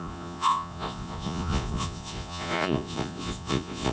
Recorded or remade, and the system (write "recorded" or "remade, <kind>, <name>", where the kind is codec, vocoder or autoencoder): remade, vocoder, Vocos